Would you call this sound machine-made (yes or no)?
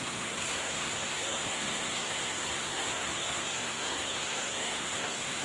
yes